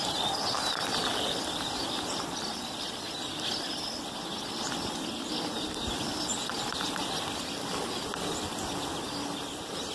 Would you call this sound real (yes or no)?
yes